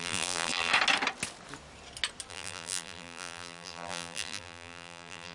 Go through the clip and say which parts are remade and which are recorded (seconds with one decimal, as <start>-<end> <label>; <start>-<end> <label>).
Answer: 0.0-0.7 remade; 0.7-2.3 recorded; 2.3-5.3 remade

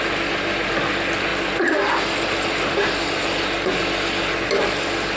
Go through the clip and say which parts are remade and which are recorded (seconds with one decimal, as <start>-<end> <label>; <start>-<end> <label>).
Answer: 0.0-5.2 recorded

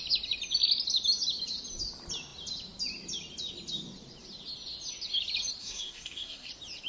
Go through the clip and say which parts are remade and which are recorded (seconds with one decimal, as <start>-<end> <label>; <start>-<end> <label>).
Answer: 0.0-5.6 recorded; 5.6-6.5 remade; 6.5-6.9 recorded

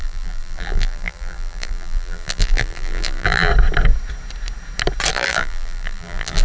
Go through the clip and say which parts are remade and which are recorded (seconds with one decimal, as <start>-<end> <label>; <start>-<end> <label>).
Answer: 0.0-3.5 remade; 3.5-5.1 recorded; 5.1-6.4 remade

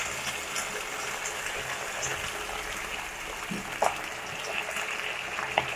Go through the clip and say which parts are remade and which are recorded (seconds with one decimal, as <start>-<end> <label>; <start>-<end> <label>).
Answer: 0.0-5.8 recorded

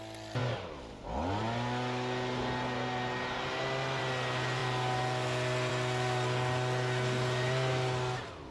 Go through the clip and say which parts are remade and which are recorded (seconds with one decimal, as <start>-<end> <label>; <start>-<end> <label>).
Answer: 0.0-8.5 recorded

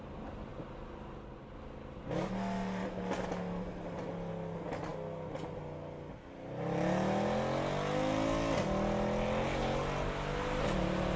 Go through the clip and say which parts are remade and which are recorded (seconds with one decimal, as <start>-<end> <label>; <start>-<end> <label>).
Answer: 0.0-11.2 recorded